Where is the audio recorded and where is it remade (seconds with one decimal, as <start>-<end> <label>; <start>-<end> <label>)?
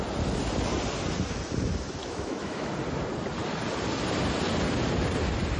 0.0-2.0 recorded; 2.0-2.7 remade; 2.7-5.6 recorded